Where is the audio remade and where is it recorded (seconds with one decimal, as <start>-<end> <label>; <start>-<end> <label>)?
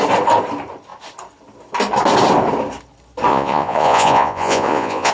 0.0-3.3 recorded; 3.3-5.1 remade